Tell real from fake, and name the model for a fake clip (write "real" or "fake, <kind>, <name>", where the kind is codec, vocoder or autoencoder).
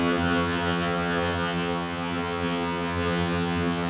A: fake, vocoder, HiFi-GAN